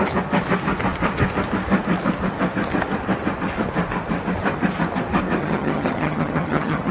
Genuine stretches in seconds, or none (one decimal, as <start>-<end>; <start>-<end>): 0.0-5.4

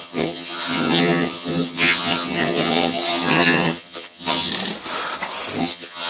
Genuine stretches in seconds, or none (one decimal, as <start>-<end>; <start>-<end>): 4.5-5.6

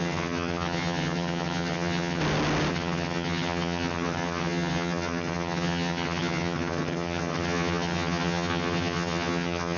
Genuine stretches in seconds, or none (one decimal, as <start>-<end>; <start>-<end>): 2.2-2.7

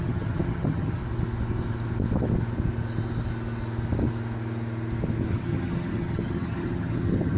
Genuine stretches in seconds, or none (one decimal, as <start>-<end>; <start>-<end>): 1.0-5.3

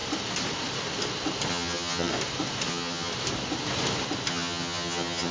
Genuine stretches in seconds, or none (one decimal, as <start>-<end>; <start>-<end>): 0.0-1.5; 2.1-2.7; 3.1-4.3

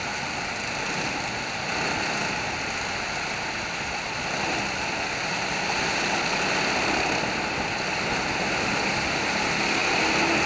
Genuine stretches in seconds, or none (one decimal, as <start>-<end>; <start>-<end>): 0.0-10.5

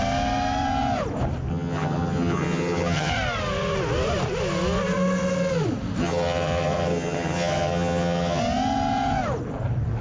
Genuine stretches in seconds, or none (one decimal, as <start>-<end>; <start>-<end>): 0.0-1.5; 3.1-6.0; 8.4-10.0

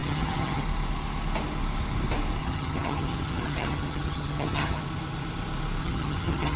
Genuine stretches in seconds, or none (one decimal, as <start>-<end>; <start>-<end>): 0.6-2.4; 4.8-5.8